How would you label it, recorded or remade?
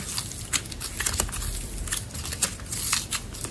recorded